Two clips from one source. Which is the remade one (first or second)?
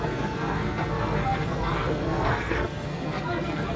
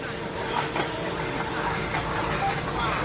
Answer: first